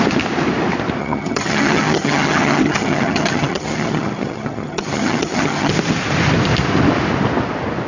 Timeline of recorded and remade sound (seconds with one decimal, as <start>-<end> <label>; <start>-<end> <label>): 0.0-1.0 recorded; 1.0-5.7 remade; 5.7-7.9 recorded